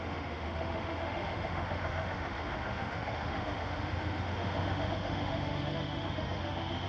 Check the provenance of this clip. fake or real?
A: fake